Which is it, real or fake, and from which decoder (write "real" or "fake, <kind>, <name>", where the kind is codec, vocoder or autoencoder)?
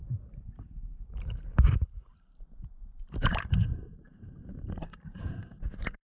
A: fake, vocoder, BigVGAN v2